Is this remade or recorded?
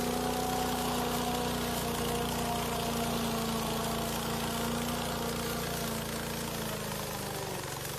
recorded